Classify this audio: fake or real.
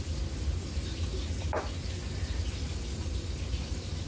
real